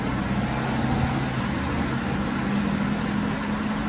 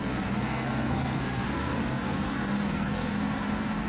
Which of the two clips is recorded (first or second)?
first